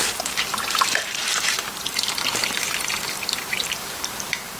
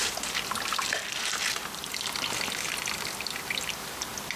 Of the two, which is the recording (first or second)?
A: second